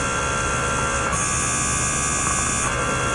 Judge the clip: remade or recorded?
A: recorded